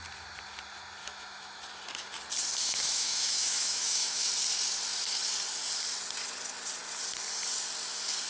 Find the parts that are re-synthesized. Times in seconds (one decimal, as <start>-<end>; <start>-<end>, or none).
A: 1.0-1.6; 2.6-4.3